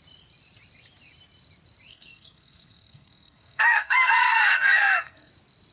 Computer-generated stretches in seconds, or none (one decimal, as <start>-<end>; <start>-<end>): 1.9-5.3